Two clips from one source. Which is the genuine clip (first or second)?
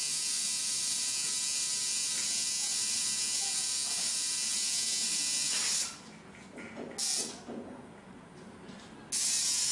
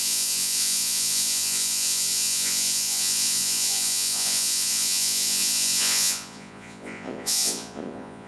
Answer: first